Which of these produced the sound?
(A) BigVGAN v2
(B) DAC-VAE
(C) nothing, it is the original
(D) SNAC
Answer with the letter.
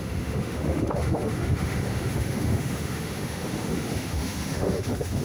B